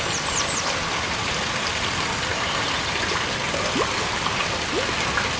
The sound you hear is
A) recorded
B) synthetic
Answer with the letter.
A